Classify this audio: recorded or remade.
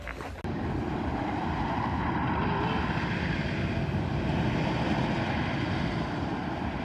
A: recorded